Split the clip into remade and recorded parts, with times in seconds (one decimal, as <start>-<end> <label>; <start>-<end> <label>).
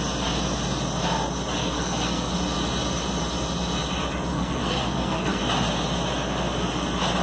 0.0-1.6 recorded; 1.6-2.3 remade; 2.3-4.3 recorded; 4.3-5.4 remade; 5.4-7.2 recorded